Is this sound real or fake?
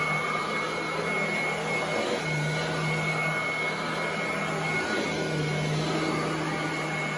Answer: real